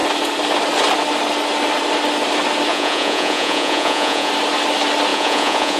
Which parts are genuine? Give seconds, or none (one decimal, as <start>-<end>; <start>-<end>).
0.0-2.7; 4.3-5.1